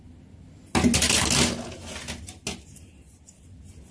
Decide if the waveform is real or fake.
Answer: real